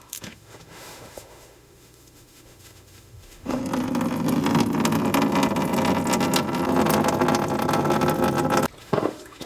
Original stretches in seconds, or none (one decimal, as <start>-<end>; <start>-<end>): 3.6-8.8